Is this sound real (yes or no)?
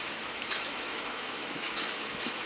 no